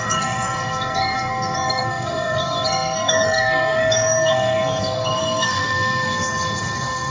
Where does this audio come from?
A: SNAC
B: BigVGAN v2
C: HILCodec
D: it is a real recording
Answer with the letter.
A